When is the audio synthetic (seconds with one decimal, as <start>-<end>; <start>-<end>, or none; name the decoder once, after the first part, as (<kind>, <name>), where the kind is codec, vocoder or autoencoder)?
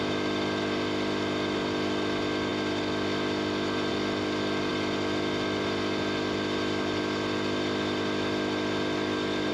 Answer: none